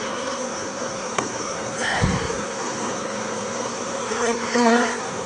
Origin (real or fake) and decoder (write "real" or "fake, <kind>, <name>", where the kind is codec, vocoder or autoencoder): fake, codec, SNAC